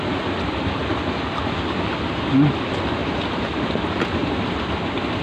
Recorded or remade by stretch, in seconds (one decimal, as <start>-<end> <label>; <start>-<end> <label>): 0.0-5.2 recorded